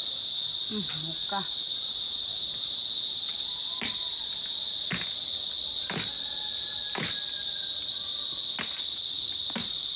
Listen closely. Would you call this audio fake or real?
real